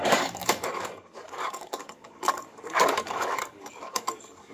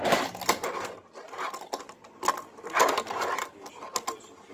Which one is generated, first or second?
first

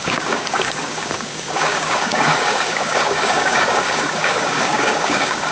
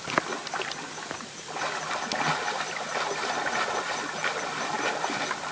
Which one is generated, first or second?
first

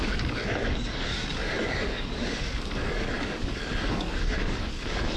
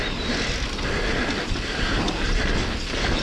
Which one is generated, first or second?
first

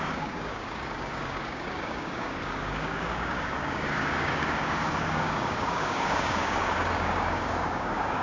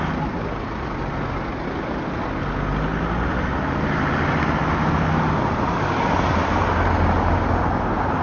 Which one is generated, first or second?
first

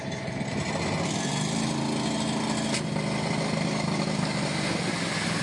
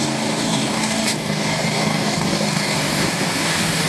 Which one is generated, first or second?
second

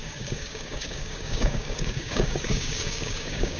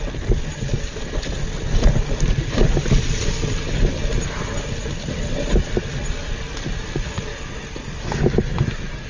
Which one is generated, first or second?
first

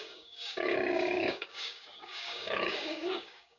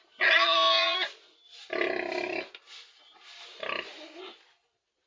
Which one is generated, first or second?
first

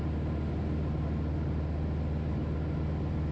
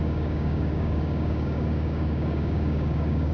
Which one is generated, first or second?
second